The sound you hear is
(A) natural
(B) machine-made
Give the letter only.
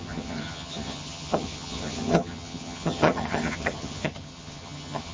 B